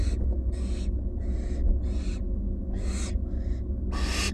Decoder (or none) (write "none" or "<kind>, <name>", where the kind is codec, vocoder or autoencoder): none